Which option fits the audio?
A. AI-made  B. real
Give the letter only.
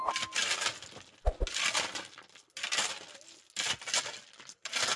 B